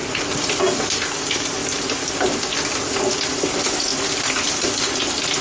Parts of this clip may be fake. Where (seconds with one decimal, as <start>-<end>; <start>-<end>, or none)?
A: 1.6-3.5; 3.9-4.7